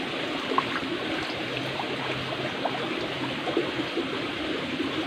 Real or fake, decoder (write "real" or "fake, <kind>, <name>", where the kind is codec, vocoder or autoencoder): real